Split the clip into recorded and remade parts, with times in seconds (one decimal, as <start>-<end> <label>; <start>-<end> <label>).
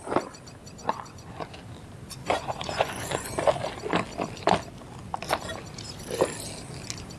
0.0-0.8 recorded; 0.8-1.5 remade; 1.5-2.2 recorded; 2.2-3.5 remade; 3.5-7.2 recorded